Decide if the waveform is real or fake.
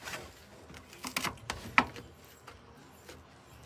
real